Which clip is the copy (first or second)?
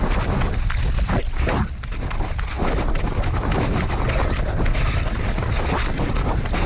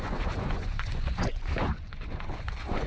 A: second